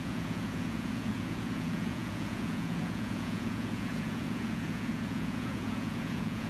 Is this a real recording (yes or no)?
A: no